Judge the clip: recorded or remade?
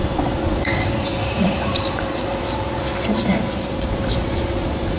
remade